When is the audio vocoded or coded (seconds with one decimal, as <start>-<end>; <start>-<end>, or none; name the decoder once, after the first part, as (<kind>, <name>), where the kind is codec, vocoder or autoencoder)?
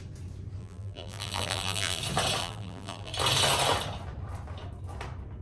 0.6-2.0 (vocoder, BigVGAN v2); 2.4-3.1